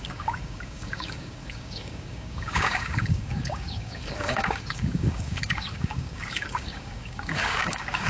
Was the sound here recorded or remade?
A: remade